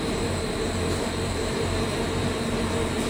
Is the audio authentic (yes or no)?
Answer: no